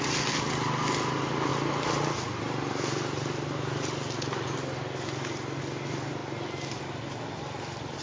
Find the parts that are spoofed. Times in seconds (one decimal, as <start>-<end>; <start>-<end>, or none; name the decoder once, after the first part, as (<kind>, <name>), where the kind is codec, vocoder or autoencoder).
none